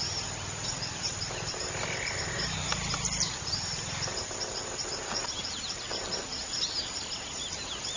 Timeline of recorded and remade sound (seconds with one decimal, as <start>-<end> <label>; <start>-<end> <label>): 0.0-8.0 recorded